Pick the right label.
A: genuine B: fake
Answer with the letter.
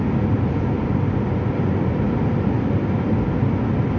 A